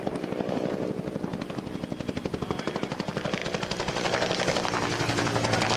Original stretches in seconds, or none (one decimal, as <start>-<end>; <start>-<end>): 1.3-2.8; 3.4-5.8